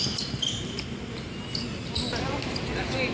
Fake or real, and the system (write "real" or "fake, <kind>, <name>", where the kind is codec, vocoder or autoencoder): real